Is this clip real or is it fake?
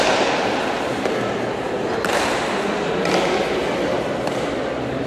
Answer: real